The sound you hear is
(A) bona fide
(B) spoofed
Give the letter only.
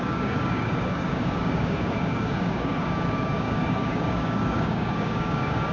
B